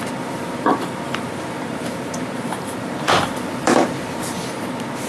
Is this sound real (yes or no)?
no